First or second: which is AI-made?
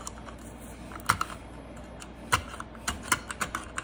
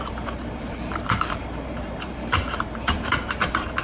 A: second